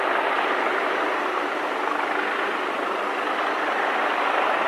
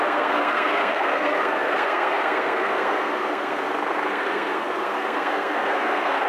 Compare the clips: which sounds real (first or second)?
first